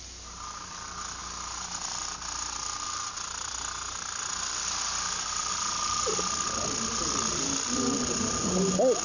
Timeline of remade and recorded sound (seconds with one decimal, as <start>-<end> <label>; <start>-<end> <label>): 0.0-9.0 recorded